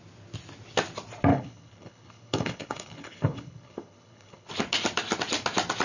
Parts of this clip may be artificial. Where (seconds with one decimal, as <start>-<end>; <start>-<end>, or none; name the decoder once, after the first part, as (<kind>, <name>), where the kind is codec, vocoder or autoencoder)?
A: 1.3-4.5 (codec, HILCodec)